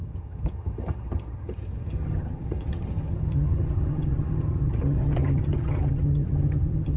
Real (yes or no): no